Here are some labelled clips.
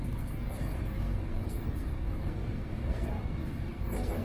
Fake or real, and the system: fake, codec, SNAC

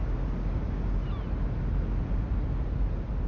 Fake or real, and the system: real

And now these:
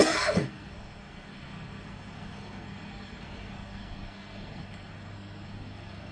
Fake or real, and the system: fake, codec, SNAC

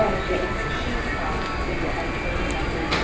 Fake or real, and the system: real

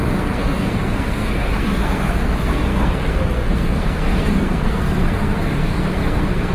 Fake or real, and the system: fake, codec, SNAC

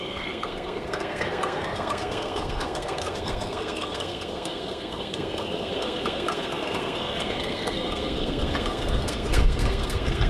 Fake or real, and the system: fake, codec, SNAC